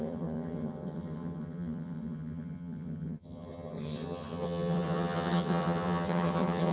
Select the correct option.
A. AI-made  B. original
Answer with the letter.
A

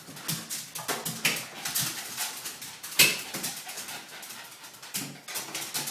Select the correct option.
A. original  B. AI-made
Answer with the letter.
A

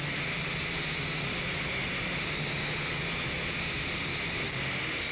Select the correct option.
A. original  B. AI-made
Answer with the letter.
A